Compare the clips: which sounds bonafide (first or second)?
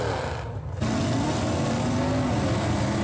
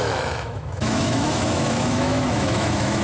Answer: first